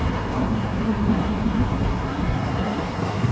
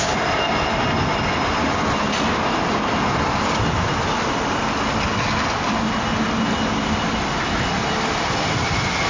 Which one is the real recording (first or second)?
second